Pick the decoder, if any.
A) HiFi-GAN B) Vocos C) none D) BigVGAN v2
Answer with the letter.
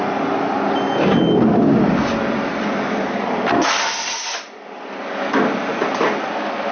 C